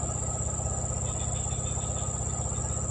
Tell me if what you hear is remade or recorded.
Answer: recorded